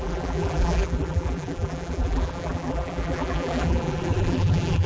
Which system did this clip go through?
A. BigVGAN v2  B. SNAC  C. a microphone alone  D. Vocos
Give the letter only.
A